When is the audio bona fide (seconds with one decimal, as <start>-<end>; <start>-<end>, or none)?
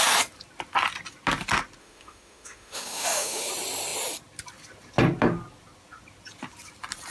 0.0-1.8; 3.5-7.1